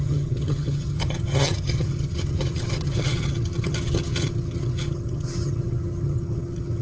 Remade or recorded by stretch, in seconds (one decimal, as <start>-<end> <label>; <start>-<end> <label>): 0.0-6.8 remade

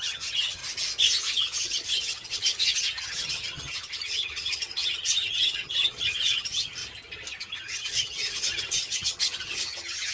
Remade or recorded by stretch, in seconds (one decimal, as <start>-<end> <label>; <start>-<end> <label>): 0.0-0.6 remade; 0.6-1.3 recorded; 1.3-6.8 remade; 6.8-7.4 recorded; 7.4-10.1 remade

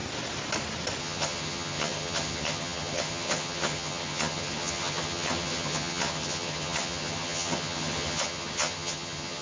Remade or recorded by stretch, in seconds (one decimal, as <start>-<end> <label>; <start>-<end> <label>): 0.0-1.0 recorded; 1.0-9.4 remade

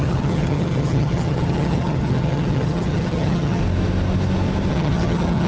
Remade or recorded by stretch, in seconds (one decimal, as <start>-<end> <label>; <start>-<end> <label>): 0.0-3.6 remade; 3.6-4.7 recorded; 4.7-5.5 remade

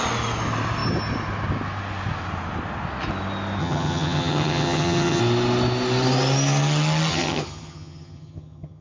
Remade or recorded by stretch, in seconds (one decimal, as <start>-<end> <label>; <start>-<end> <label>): 0.0-3.6 recorded; 3.6-5.2 remade; 5.2-7.1 recorded; 7.1-8.8 remade

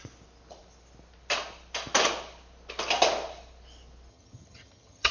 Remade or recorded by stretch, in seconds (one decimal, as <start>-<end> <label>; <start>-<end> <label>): 0.0-4.1 recorded; 4.1-5.1 remade

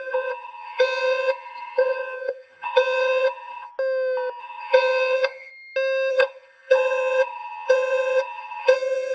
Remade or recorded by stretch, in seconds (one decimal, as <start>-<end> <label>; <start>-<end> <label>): 0.0-3.7 remade; 3.7-4.4 recorded; 4.4-5.5 remade; 5.5-6.1 recorded; 6.1-9.1 remade